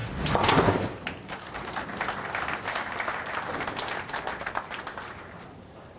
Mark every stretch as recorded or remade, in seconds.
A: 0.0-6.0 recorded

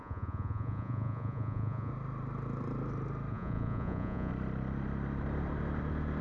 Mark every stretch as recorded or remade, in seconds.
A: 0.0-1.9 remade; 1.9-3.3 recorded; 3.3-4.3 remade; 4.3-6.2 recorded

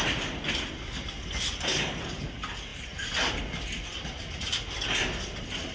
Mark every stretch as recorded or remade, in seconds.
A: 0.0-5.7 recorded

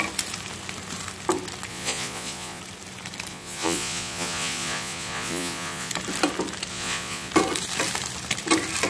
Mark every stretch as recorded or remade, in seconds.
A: 0.0-1.7 recorded; 1.7-2.6 remade; 2.6-3.3 recorded; 3.3-5.9 remade; 5.9-6.7 recorded; 6.7-7.3 remade; 7.3-8.9 recorded

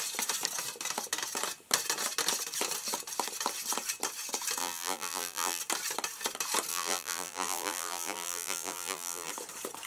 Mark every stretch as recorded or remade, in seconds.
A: 0.0-4.6 recorded; 4.6-5.6 remade; 5.6-6.7 recorded; 6.7-9.3 remade; 9.3-9.9 recorded

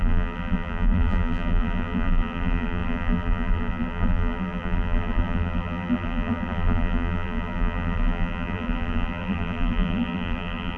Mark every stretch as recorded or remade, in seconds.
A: 0.0-10.8 remade

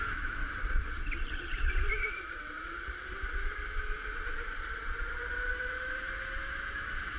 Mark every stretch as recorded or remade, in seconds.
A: 0.0-0.4 remade; 0.4-1.9 recorded; 1.9-2.4 remade; 2.4-5.5 recorded; 5.5-7.2 remade